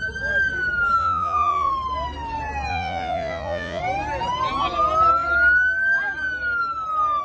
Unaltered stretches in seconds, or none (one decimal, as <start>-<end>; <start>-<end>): 0.0-1.0; 1.7-2.7; 3.8-7.2